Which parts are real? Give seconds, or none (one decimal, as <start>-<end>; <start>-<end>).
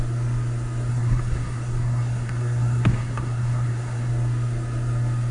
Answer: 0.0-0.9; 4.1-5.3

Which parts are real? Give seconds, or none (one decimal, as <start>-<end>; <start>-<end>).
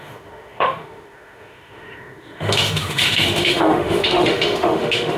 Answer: none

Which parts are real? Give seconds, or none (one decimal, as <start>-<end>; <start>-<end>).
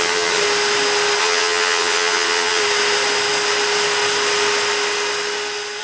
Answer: 0.4-1.2; 2.6-5.8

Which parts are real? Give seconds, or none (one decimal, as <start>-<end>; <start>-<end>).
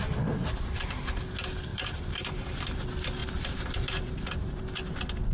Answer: 0.0-1.7; 2.5-3.2; 4.6-5.3